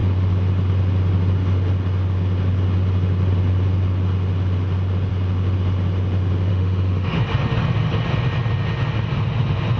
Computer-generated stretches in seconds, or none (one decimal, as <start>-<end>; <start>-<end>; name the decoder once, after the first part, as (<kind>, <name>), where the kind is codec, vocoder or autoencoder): 6.5-7.2 (autoencoder, DAC-VAE)